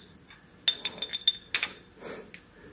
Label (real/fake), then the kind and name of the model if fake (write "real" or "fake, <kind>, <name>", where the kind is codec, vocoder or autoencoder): real